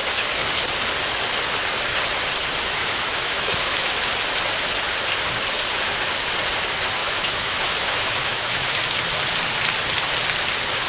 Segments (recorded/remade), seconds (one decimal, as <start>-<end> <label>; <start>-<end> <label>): 0.0-2.8 recorded; 2.8-3.9 remade; 3.9-7.0 recorded; 7.0-8.8 remade; 8.8-10.9 recorded